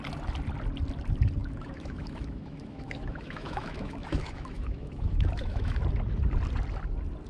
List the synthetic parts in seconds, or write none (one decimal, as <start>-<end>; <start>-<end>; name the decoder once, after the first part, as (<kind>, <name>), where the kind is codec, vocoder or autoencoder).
1.4-5.8 (autoencoder, DAC-VAE)